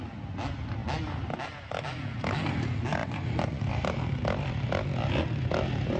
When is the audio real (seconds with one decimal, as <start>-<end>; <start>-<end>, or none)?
0.0-3.0; 3.6-6.0